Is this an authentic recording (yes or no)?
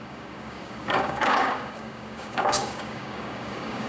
no